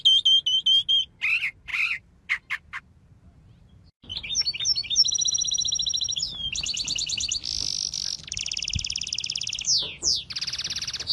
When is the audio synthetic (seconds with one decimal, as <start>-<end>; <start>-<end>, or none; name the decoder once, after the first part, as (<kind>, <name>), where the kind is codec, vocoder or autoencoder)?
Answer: 1.7-2.8 (vocoder, BigVGAN v2); 4.1-8.4